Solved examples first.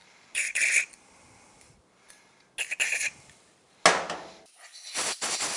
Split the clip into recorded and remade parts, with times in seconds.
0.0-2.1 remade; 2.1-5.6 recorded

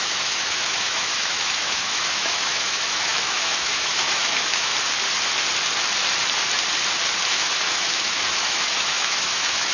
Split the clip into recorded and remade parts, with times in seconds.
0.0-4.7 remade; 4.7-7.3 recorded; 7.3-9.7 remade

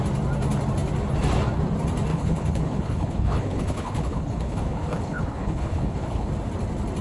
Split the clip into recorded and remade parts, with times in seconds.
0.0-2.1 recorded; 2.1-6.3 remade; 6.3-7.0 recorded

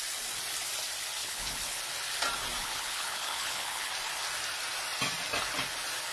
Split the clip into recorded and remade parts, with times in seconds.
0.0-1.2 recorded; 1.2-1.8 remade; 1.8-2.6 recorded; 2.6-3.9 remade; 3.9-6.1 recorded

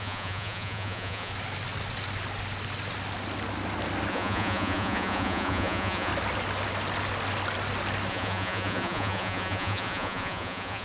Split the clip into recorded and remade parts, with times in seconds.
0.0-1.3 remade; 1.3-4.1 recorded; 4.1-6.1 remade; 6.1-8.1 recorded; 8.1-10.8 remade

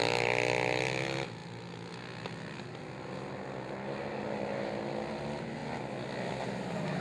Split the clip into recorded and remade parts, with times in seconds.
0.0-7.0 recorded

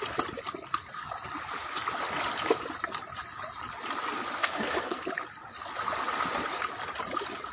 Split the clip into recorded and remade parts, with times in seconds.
0.0-4.4 recorded; 4.4-5.0 remade; 5.0-7.5 recorded

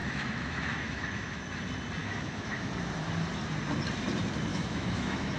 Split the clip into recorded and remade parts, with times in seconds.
0.0-1.4 remade; 1.4-2.0 recorded; 2.0-2.7 remade; 2.7-4.5 recorded; 4.5-5.4 remade